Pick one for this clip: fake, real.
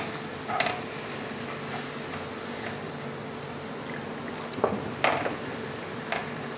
real